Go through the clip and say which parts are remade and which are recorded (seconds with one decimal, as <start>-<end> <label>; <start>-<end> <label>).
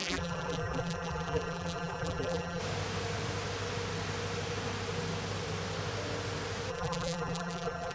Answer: 0.0-2.6 remade; 2.6-6.7 recorded; 6.7-7.9 remade